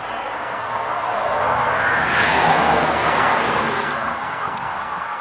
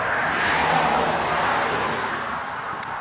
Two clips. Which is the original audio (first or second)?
second